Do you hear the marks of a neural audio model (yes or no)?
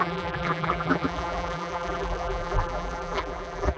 yes